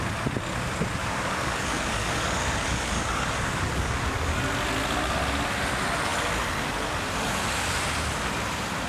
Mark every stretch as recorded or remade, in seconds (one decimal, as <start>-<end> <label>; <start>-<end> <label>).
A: 0.0-1.0 recorded; 1.0-4.4 remade; 4.4-8.9 recorded